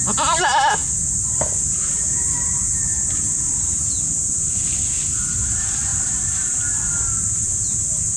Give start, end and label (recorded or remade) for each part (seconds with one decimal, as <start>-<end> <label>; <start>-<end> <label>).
0.0-8.2 recorded